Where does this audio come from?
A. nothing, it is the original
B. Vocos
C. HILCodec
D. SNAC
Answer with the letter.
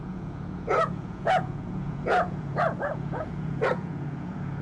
B